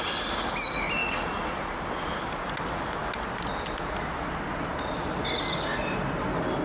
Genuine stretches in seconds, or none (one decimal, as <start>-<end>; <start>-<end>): 0.0-6.6